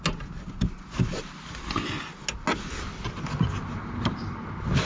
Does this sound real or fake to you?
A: real